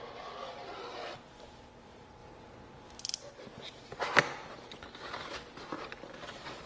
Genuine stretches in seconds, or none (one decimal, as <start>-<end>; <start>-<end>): 0.0-6.7